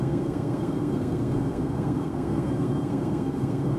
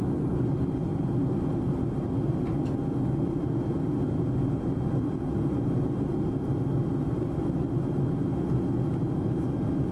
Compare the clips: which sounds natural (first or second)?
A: second